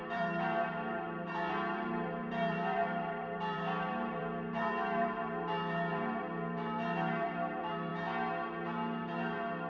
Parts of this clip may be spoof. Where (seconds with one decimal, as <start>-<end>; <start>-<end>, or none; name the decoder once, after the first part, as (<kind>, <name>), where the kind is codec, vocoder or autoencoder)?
0.0-7.9 (vocoder, BigVGAN v2)